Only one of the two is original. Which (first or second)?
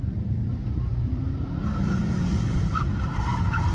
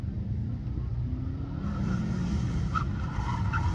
second